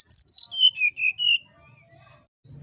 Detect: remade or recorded recorded